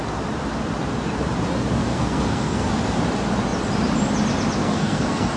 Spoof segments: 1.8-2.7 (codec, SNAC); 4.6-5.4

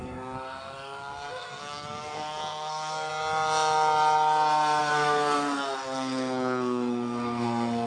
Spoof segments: 0.0-3.1 (codec, SNAC); 4.8-7.9

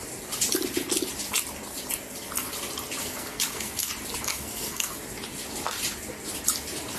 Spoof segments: 3.0-3.9 (codec, SNAC); 4.3-4.9

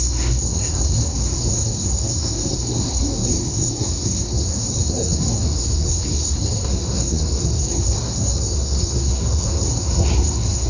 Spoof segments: 0.0-10.7 (codec, SNAC)

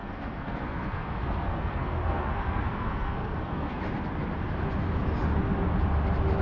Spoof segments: 0.0-3.8 (codec, SNAC)